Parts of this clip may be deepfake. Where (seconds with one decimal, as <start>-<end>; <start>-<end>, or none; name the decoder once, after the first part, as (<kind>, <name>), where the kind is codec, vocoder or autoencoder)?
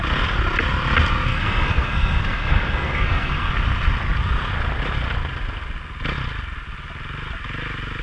1.3-3.5 (codec, SNAC)